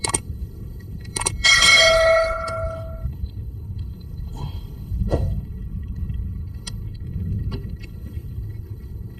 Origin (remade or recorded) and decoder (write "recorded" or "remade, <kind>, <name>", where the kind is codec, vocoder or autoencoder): remade, codec, HILCodec